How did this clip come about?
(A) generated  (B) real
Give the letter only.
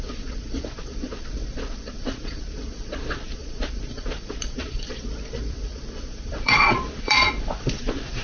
A